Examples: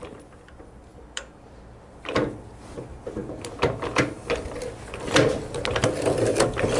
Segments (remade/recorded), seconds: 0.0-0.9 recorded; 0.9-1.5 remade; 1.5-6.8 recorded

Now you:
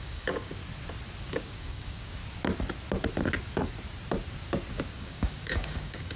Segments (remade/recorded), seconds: 0.0-0.6 remade; 0.6-1.2 recorded; 1.2-2.2 remade; 2.2-4.7 recorded; 4.7-6.2 remade